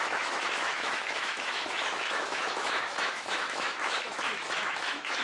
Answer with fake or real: fake